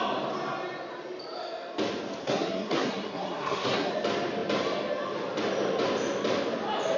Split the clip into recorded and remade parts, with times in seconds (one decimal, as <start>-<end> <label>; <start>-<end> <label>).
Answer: 0.0-2.2 recorded; 2.2-3.9 remade; 3.9-7.0 recorded